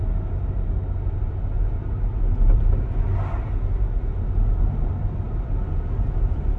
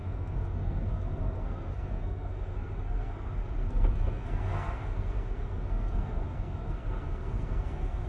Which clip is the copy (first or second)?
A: second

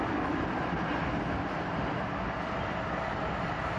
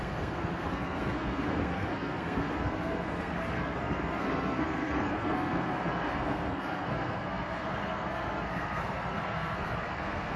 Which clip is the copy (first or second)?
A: second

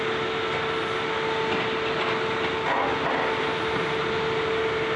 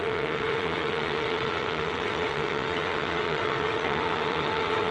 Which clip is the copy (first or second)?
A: second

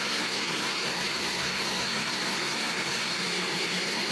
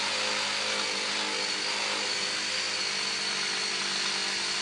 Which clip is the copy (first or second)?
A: first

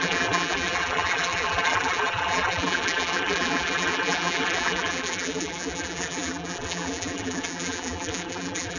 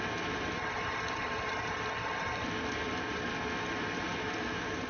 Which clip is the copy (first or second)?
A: first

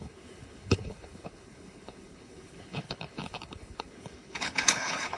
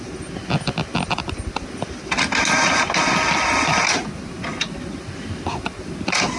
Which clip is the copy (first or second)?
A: first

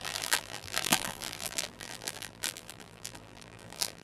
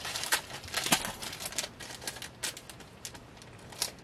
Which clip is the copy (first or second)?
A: first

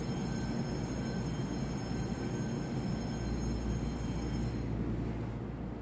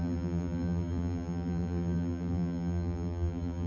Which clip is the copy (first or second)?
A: second